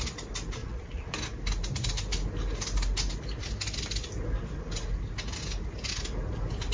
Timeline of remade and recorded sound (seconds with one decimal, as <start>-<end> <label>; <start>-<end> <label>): 0.0-0.6 recorded; 0.6-1.1 remade; 1.1-6.7 recorded